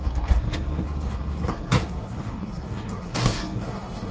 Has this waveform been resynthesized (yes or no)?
yes